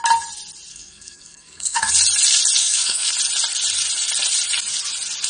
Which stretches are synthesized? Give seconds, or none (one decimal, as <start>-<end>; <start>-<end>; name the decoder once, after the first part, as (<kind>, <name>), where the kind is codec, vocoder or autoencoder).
0.7-1.9 (codec, SNAC); 2.6-3.1